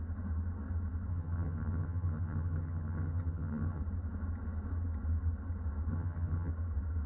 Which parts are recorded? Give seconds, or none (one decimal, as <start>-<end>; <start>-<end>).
0.0-1.1; 3.8-5.9; 6.5-7.1